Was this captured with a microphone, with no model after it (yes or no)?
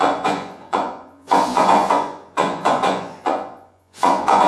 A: no